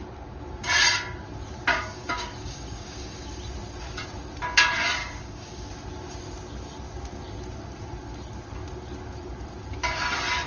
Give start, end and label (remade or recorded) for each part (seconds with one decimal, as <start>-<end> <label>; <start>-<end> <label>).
0.0-1.7 recorded; 1.7-3.4 remade; 3.4-5.0 recorded; 5.0-5.7 remade; 5.7-10.5 recorded